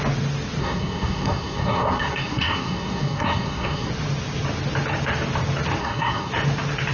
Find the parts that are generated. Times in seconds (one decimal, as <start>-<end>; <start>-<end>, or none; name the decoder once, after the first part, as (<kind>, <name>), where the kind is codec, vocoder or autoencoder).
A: 0.6-3.9 (codec, SNAC); 5.8-6.3